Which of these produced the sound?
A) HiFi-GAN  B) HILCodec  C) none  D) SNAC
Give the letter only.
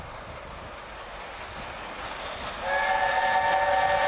C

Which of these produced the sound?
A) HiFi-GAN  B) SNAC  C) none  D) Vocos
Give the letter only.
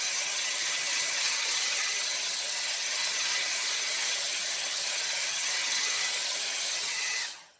A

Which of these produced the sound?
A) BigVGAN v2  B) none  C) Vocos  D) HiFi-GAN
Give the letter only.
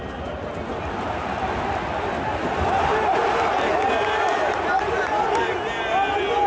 B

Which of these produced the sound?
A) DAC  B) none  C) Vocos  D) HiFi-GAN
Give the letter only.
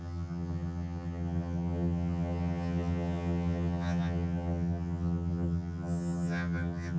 D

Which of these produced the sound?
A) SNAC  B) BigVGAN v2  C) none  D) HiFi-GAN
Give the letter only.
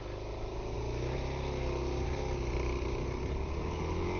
C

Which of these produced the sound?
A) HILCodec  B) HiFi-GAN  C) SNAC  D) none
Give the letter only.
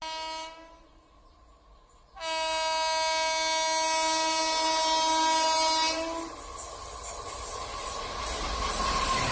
D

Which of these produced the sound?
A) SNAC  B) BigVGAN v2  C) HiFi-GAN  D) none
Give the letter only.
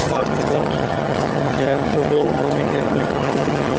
C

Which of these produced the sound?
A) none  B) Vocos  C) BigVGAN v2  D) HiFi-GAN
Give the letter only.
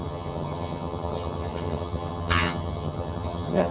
D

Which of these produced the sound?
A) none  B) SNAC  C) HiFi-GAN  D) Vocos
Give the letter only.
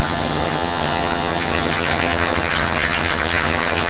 C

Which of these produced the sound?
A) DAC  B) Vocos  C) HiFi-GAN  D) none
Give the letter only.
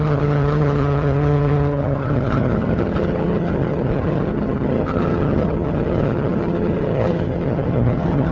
C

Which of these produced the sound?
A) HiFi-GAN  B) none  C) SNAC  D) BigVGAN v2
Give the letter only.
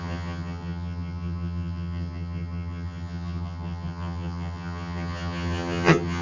A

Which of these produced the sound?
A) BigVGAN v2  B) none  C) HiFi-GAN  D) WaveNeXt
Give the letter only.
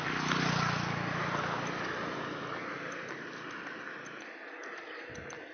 B